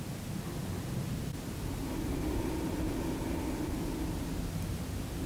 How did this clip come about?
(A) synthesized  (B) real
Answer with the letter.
B